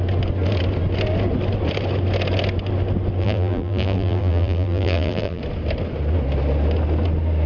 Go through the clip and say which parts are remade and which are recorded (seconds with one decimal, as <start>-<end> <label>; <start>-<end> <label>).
0.0-3.2 recorded; 3.2-5.4 remade; 5.4-7.5 recorded